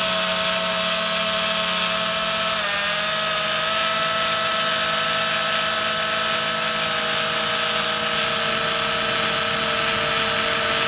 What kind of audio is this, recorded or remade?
recorded